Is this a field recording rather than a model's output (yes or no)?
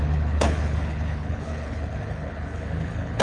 no